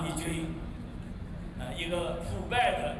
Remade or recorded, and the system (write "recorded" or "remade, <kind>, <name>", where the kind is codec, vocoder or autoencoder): recorded